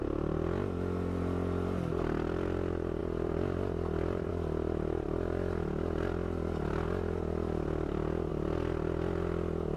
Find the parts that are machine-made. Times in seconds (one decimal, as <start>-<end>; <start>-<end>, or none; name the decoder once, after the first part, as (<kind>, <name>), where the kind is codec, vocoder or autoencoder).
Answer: 3.0-4.3 (vocoder, BigVGAN v2)